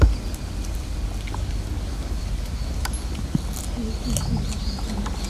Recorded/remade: recorded